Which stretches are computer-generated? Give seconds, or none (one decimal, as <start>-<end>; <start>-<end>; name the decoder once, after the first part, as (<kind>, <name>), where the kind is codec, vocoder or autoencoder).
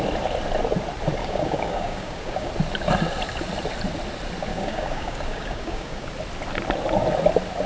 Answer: 1.2-2.5 (codec, DAC); 4.5-6.1